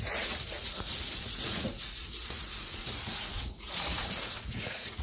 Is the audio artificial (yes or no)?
yes